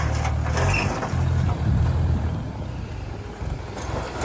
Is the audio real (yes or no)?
yes